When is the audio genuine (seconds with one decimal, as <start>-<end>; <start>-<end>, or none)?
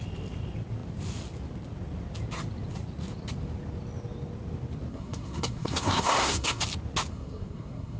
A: 0.0-4.9; 6.6-7.1